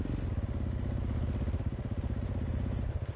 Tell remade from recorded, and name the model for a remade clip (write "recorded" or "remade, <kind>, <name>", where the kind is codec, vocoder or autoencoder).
recorded